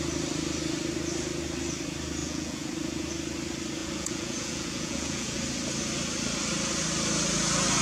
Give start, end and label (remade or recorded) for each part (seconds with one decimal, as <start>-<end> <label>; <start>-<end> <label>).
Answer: 0.0-2.2 recorded; 2.2-2.7 remade; 2.7-3.8 recorded; 3.8-5.4 remade; 5.4-7.8 recorded